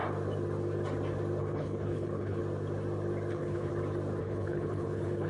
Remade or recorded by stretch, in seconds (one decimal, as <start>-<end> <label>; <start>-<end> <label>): 0.0-1.4 recorded; 1.4-2.4 remade; 2.4-3.3 recorded; 3.3-3.7 remade; 3.7-4.2 recorded; 4.2-5.3 remade